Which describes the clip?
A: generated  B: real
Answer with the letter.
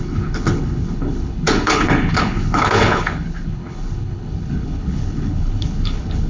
A